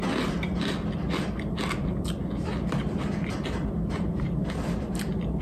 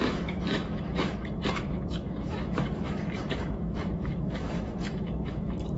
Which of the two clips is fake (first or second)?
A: second